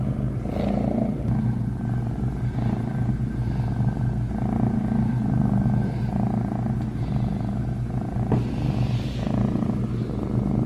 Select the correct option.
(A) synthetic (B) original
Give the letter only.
B